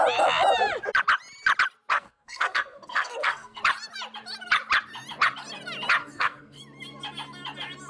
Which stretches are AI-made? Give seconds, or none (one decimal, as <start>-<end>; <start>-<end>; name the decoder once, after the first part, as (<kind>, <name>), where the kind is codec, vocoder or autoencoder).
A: 1.9-3.6 (codec, SNAC); 6.0-6.6